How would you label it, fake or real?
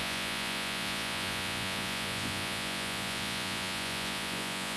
fake